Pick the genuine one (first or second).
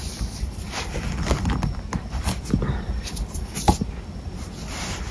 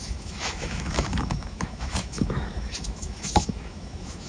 first